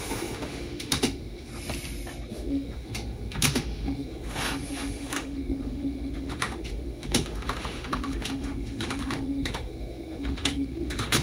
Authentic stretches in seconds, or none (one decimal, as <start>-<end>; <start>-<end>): 1.5-2.3